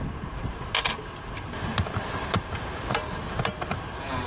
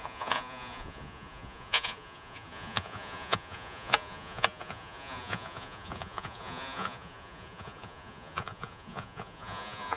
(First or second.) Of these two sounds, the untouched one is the first